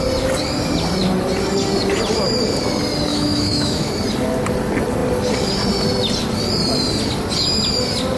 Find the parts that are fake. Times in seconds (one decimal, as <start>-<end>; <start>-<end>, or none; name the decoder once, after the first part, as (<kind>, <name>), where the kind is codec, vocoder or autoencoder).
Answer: 3.1-3.9 (autoencoder, DAC-VAE)